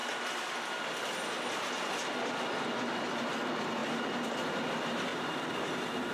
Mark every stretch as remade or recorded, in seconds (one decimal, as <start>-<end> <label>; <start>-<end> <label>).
0.0-5.1 recorded; 5.1-6.1 remade